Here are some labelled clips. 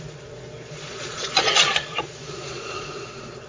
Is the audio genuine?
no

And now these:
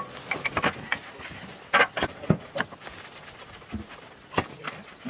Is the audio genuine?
yes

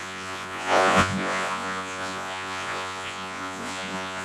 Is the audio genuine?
no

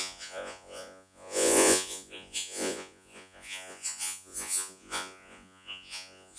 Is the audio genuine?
no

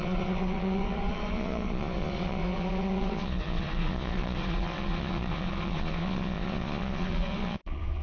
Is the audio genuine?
no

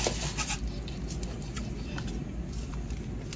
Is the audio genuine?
yes